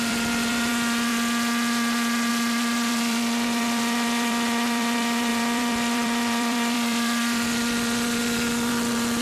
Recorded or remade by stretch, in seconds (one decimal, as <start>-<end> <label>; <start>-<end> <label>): 0.0-1.1 remade; 1.1-2.3 recorded; 2.3-9.2 remade